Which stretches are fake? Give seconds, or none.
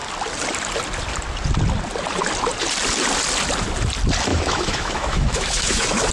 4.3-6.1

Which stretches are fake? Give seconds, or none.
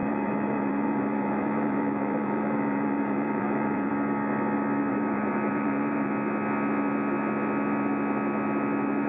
0.0-3.9; 4.9-6.1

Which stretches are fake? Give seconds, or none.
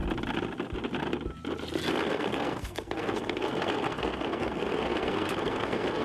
1.9-6.0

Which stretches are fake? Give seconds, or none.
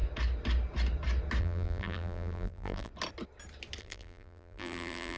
1.4-2.9; 3.8-5.2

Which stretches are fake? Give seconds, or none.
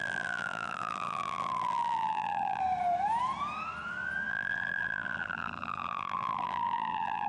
0.0-2.6; 4.3-7.3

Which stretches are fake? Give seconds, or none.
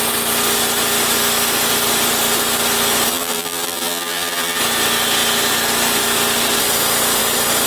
3.1-4.6